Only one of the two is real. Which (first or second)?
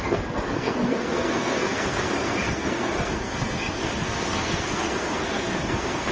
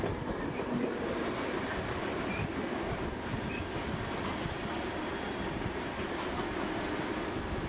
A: second